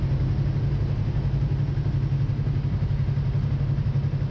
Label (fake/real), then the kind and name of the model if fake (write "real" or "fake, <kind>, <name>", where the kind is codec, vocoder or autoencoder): real